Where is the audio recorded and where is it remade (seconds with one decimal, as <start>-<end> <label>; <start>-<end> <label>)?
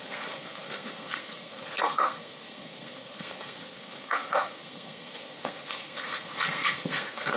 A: 0.0-7.4 remade